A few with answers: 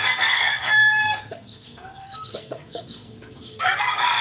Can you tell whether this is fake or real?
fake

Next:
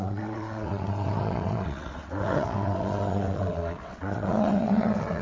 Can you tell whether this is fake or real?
fake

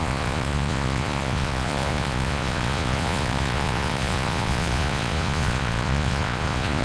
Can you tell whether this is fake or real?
fake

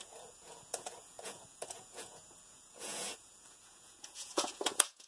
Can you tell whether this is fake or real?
fake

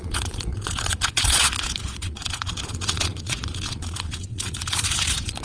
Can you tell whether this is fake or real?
fake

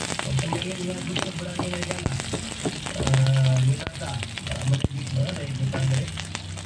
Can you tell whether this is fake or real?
real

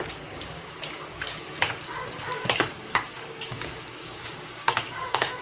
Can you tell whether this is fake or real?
fake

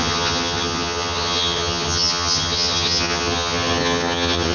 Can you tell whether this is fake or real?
fake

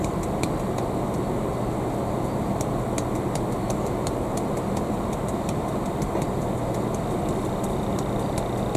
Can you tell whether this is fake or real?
real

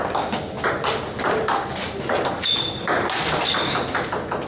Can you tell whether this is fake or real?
real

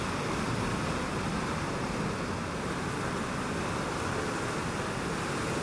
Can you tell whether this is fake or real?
real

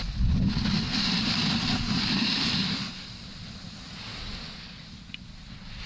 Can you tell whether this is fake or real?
real